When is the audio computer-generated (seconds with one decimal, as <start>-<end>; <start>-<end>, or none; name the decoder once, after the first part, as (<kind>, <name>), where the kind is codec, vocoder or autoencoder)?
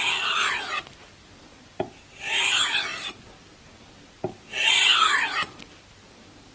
none